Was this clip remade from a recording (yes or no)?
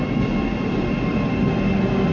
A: no